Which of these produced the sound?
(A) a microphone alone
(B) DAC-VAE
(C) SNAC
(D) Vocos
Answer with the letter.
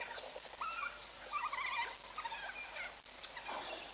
A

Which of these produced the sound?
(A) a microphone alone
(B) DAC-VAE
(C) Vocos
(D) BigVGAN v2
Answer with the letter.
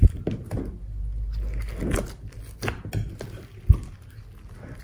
A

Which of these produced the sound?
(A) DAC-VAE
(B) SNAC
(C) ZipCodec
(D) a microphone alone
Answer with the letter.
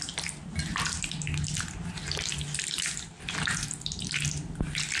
D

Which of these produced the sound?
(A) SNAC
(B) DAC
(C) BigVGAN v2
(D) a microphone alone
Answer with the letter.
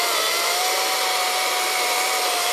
D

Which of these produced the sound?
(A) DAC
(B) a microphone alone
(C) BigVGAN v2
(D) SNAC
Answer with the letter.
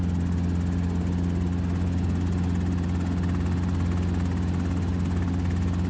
B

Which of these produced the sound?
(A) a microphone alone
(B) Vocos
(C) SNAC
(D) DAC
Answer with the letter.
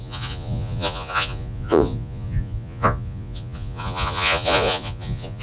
B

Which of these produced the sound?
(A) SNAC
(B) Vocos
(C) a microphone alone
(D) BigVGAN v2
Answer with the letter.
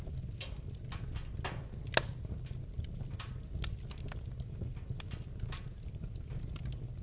C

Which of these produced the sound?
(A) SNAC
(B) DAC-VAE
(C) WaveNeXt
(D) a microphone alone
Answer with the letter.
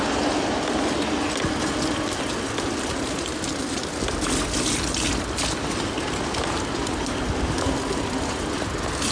D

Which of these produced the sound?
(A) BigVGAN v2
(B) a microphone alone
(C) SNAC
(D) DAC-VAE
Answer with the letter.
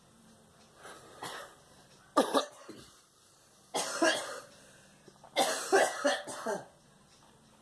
A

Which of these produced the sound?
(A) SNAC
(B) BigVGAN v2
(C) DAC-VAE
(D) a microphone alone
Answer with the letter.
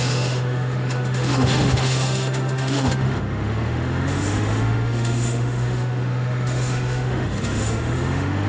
C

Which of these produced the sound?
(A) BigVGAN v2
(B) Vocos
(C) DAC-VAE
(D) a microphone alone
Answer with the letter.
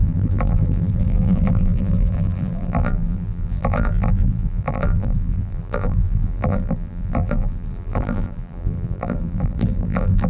A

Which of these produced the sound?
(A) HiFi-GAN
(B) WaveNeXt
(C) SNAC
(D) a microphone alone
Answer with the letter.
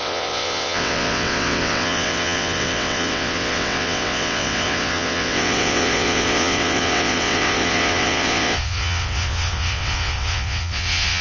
B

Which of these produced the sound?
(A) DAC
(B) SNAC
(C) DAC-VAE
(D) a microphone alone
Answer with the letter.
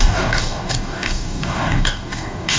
A